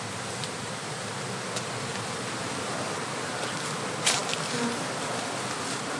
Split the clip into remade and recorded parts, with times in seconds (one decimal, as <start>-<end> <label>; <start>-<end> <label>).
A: 0.0-6.0 recorded